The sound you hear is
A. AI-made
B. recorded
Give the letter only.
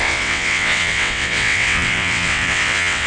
A